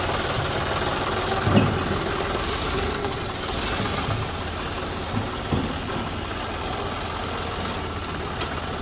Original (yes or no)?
yes